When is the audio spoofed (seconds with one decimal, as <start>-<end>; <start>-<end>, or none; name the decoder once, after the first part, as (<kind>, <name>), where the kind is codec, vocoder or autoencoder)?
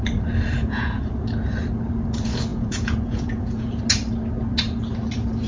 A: 0.6-1.1 (vocoder, Vocos); 2.5-3.8